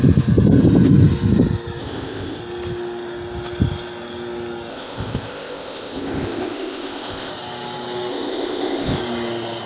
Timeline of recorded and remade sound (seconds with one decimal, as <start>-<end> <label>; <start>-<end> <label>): 0.0-1.8 recorded; 1.8-2.4 remade; 2.4-4.7 recorded; 4.7-7.3 remade; 7.3-8.1 recorded; 8.1-9.0 remade; 9.0-9.7 recorded